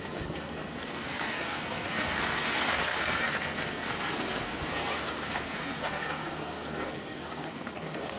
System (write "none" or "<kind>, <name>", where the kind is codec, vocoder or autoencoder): codec, SNAC